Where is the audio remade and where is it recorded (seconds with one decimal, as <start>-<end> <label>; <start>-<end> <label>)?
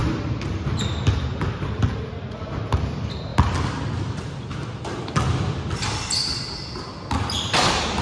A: 0.0-8.0 recorded